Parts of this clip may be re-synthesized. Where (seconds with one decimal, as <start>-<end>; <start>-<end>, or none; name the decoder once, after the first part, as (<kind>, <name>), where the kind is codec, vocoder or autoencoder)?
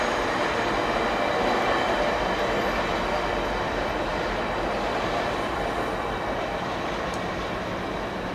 none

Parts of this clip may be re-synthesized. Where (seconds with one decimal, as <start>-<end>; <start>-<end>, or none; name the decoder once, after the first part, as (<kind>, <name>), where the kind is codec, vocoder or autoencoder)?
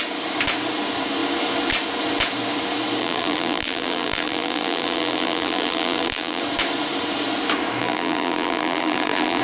3.0-6.4 (vocoder, BigVGAN v2); 7.8-9.4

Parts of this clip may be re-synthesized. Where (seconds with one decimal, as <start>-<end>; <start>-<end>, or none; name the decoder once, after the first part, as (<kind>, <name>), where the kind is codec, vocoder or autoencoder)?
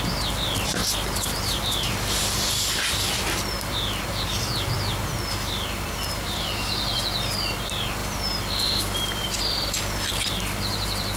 8.0-10.1 (vocoder, BigVGAN v2)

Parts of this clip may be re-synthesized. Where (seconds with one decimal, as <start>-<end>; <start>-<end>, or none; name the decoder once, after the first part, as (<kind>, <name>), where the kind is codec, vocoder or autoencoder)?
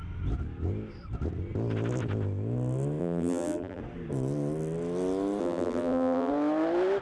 3.0-3.8 (vocoder, BigVGAN v2); 5.4-6.3